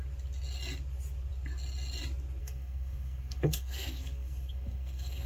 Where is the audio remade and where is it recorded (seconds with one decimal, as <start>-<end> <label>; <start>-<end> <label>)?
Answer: 0.0-2.4 recorded; 2.4-5.3 remade